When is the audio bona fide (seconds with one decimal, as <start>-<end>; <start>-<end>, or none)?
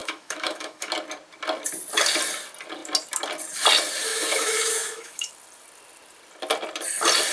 0.9-4.1; 5.3-7.3